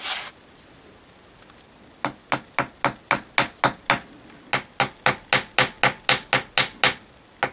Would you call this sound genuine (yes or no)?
yes